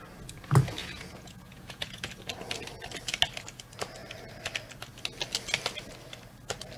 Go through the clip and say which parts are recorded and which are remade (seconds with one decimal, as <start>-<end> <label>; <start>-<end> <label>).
0.0-0.8 recorded; 0.8-2.1 remade; 2.1-6.8 recorded